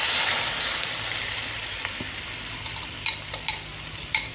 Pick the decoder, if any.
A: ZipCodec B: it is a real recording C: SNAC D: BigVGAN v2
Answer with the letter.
D